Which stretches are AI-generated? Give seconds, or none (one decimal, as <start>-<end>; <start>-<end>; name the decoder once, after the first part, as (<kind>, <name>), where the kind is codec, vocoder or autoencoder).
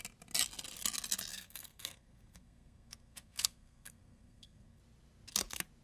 1.3-4.8 (codec, SNAC)